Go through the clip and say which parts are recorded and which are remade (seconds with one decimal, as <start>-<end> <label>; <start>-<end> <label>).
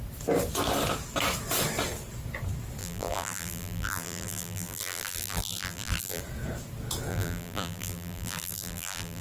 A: 0.0-2.8 recorded; 2.8-6.2 remade; 6.2-7.1 recorded; 7.1-9.2 remade